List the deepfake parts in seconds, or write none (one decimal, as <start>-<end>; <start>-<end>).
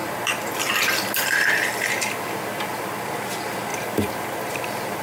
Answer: 0.0-3.0; 3.7-5.0